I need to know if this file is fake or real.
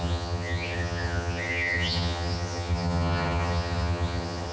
fake